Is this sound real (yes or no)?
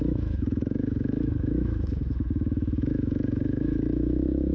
no